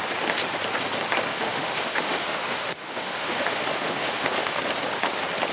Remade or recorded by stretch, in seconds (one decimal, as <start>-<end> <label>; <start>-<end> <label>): 0.0-1.3 recorded; 1.3-4.6 remade; 4.6-5.5 recorded